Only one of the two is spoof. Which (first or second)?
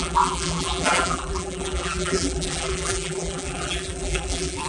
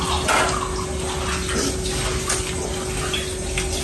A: first